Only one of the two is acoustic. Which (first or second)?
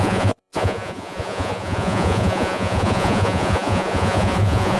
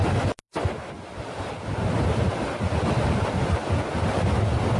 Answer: second